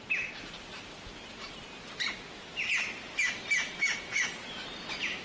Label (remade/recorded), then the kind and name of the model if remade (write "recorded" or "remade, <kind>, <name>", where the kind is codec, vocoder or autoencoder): recorded